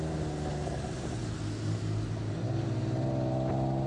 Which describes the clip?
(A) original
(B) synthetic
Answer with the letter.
A